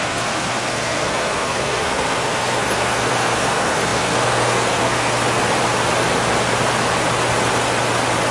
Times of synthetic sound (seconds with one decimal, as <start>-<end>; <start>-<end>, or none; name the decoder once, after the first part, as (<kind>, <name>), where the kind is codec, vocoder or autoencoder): 0.0-5.2 (codec, SNAC)